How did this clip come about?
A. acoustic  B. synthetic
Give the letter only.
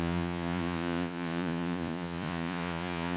B